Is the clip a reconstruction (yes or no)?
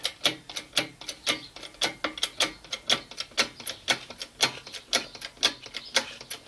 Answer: no